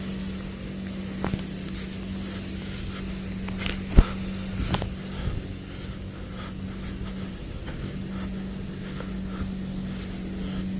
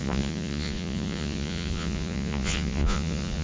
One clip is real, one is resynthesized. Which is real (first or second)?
first